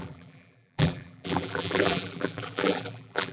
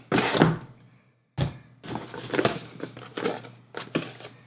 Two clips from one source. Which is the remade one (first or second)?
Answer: first